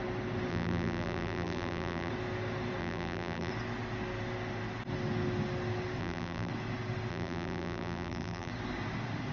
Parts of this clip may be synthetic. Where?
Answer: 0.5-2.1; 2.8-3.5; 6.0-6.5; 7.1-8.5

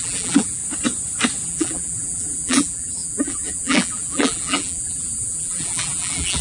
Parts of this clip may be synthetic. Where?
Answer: 0.0-0.6; 1.5-6.4

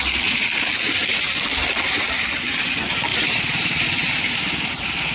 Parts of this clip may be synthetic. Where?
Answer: 3.1-4.4

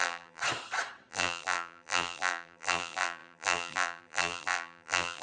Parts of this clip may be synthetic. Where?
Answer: 0.0-0.4; 1.1-5.2

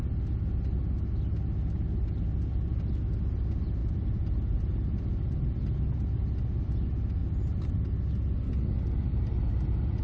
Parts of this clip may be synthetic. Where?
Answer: 3.8-5.4; 7.2-8.1; 9.1-10.0

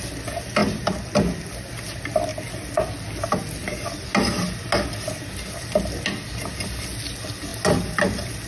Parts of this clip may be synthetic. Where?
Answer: none